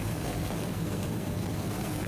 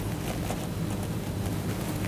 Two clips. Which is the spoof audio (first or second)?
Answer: first